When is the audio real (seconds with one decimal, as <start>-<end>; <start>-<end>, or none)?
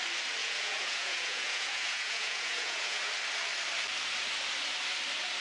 0.0-0.4; 3.1-5.4